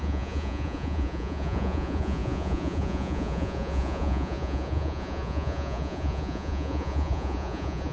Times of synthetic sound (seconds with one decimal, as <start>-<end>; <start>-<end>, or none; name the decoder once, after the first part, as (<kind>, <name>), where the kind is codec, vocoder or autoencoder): 0.0-7.9 (vocoder, Vocos)